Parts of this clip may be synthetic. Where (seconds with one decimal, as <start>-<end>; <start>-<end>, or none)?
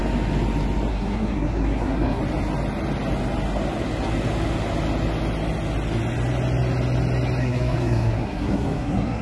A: 0.9-2.2; 7.4-9.2